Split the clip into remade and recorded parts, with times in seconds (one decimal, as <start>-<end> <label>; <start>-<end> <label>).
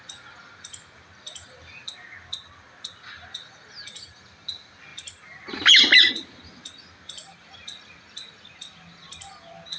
0.0-9.8 recorded